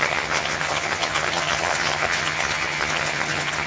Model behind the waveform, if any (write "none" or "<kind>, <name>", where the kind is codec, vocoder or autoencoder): vocoder, HiFi-GAN